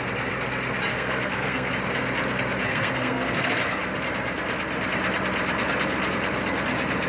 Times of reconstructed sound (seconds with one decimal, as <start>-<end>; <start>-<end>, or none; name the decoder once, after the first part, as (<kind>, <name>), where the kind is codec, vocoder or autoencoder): 0.9-1.7 (codec, SNAC); 2.7-3.3